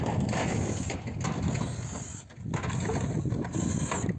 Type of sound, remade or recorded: recorded